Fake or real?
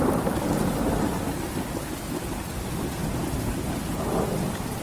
real